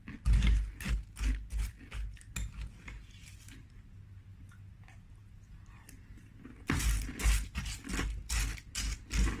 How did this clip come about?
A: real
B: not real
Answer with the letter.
A